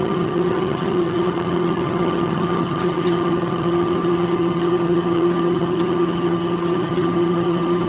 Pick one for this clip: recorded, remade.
remade